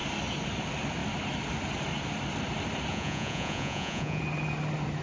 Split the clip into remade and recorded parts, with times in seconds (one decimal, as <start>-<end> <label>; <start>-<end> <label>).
0.0-2.9 recorded; 2.9-4.2 remade; 4.2-5.0 recorded